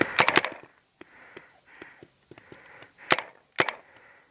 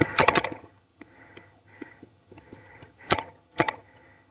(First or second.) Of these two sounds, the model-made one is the second